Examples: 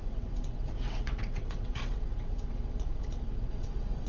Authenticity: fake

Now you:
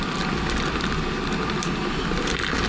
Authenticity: real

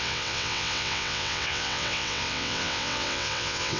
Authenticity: fake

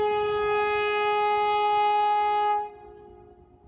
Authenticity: real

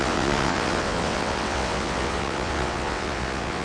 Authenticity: fake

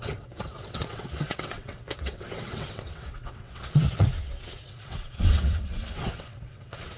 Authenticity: fake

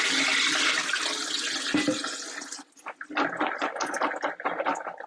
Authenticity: real